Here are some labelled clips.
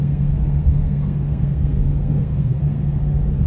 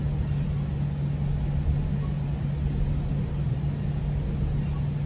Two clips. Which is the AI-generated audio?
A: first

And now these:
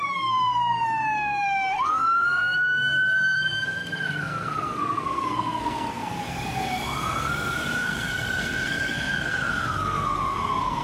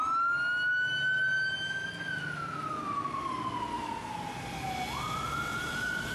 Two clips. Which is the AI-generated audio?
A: first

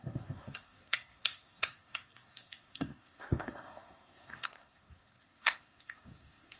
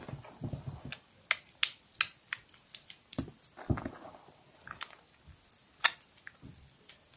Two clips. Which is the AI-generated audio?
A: first